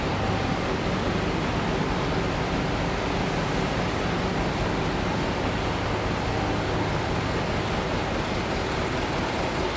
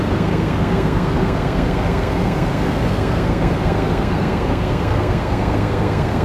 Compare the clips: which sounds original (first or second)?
first